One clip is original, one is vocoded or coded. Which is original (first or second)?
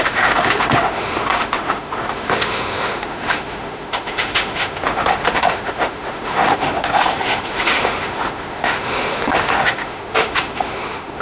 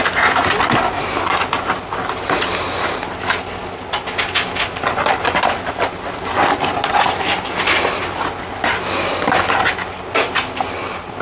second